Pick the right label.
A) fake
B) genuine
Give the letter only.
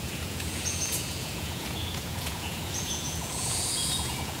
A